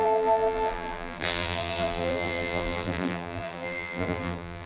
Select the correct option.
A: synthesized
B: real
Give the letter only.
A